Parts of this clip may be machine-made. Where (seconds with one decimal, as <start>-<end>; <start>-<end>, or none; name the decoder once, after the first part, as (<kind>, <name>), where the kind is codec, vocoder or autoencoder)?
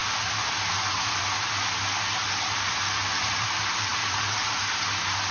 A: 3.2-5.3 (vocoder, BigVGAN v2)